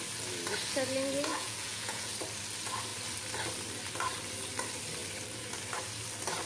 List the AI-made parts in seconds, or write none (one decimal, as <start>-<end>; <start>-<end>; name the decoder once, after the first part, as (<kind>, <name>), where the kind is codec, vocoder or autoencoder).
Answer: 1.3-2.1 (vocoder, Vocos)

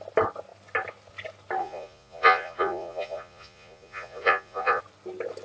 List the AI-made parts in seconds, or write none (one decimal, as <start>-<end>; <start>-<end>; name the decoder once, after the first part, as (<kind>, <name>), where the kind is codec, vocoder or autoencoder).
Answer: 1.6-4.8 (vocoder, Vocos)